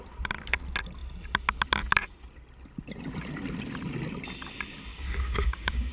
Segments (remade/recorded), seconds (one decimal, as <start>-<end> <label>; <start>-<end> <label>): 0.0-4.9 recorded; 4.9-5.9 remade